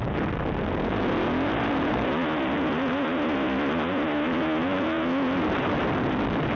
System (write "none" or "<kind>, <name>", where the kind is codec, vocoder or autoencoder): none